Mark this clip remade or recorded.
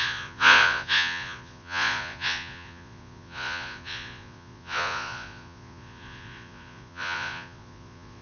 remade